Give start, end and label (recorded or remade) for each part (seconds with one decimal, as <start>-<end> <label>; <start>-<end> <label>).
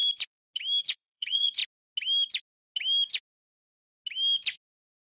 0.0-0.8 recorded; 0.8-1.6 remade; 1.6-5.1 recorded